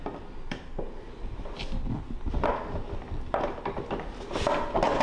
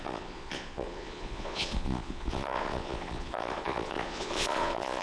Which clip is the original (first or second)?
first